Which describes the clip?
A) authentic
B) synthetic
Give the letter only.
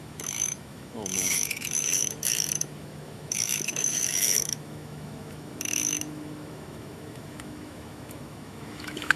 B